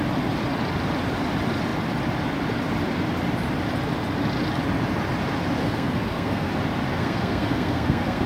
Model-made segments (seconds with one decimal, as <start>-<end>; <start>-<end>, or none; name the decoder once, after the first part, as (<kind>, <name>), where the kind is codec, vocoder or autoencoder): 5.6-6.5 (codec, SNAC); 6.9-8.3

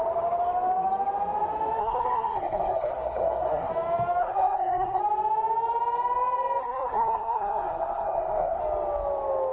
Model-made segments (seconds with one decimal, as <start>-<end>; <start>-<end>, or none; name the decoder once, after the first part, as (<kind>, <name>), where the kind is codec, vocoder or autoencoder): 1.8-3.7 (codec, SNAC); 4.2-5.0; 6.6-8.6

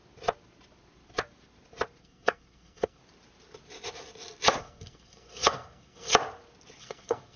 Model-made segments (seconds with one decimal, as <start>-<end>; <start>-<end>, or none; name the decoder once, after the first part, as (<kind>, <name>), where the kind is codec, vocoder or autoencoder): 2.0-3.0 (codec, SNAC); 4.6-6.1; 6.8-7.4

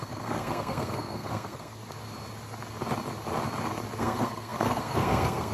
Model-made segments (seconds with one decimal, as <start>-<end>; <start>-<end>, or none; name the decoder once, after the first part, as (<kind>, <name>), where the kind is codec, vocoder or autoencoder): 0.0-1.8 (codec, SNAC); 4.0-5.5

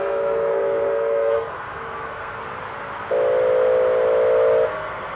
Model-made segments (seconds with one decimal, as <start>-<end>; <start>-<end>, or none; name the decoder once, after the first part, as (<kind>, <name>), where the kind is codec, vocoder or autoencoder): 0.0-2.4 (codec, SNAC); 4.7-5.2